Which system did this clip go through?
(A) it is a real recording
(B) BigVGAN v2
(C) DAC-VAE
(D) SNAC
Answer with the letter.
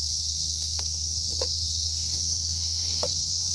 D